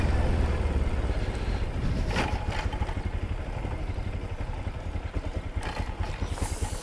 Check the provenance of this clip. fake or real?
real